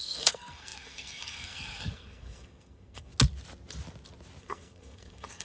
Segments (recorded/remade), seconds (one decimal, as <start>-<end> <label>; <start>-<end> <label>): 0.0-3.1 remade; 3.1-4.4 recorded; 4.4-5.4 remade